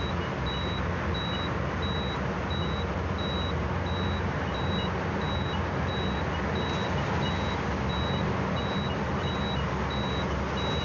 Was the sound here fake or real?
real